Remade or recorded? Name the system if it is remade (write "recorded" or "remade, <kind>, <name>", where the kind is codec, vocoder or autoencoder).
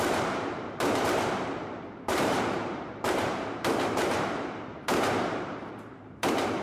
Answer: remade, vocoder, BigVGAN v2